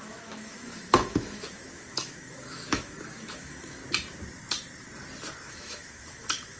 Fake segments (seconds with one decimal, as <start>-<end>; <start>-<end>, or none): 0.0-3.8; 5.5-6.6